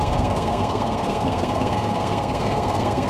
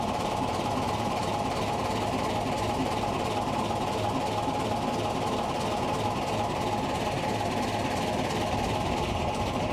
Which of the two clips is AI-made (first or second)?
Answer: first